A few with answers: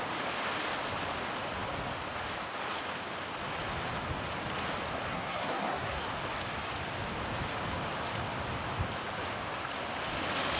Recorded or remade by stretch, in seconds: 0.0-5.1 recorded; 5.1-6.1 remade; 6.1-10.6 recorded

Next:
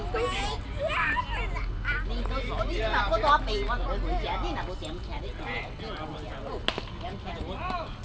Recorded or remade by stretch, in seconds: 0.0-8.0 recorded

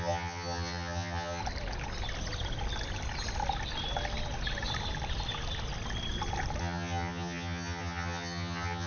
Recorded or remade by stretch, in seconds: 0.0-1.4 remade; 1.4-6.6 recorded; 6.6-8.9 remade